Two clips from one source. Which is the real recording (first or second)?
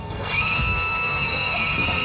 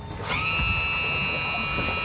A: second